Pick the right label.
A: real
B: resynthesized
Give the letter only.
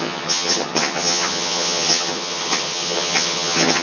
B